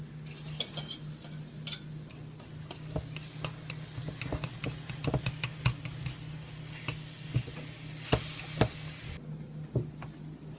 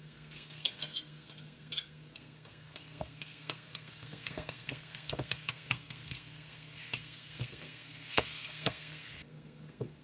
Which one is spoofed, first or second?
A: second